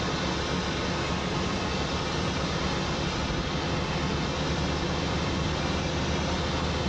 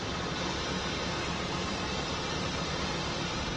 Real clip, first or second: first